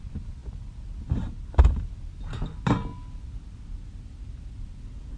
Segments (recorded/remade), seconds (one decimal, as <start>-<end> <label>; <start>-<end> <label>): 0.0-5.2 recorded